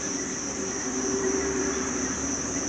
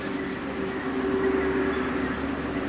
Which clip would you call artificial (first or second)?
first